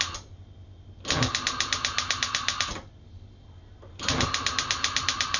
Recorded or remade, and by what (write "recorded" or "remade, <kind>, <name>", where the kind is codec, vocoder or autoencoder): recorded